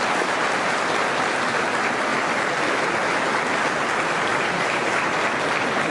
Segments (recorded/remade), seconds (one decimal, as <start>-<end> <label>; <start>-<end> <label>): 0.0-4.3 recorded; 4.3-5.2 remade; 5.2-5.9 recorded

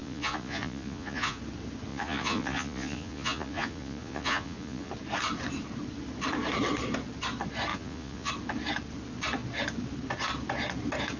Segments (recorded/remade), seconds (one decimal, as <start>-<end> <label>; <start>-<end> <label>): 0.0-1.4 remade; 1.4-1.9 recorded; 1.9-4.9 remade; 4.9-7.7 recorded; 7.7-8.3 remade; 8.3-11.2 recorded

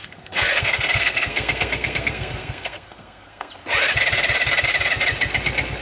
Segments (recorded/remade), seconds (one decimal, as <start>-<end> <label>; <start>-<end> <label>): 0.0-3.5 remade; 3.5-5.8 recorded

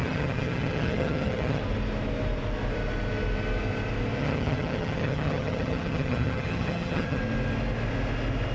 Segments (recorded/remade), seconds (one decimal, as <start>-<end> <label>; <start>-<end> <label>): 0.0-1.6 remade; 1.6-4.2 recorded; 4.2-7.2 remade; 7.2-8.5 recorded

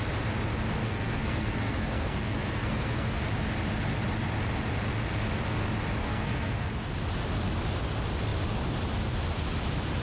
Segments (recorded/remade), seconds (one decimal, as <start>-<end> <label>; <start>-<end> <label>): 0.0-0.8 recorded; 0.8-3.2 remade; 3.2-6.0 recorded; 6.0-6.7 remade; 6.7-10.0 recorded

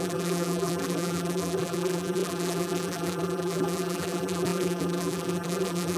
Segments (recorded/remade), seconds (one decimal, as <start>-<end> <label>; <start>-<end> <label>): 0.0-6.0 remade

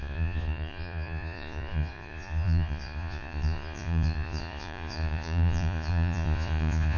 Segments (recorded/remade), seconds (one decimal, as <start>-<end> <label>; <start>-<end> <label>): 0.0-7.0 remade

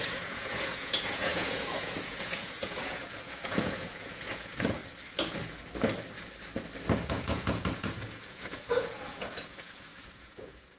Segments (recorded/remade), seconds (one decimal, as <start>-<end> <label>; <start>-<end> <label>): 0.0-4.8 remade; 4.8-7.1 recorded; 7.1-10.8 remade